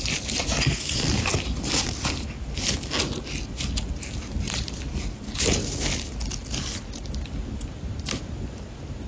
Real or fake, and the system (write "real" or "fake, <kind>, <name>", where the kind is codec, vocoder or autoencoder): real